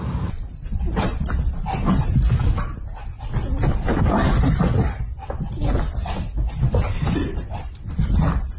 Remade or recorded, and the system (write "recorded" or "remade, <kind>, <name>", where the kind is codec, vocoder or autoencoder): recorded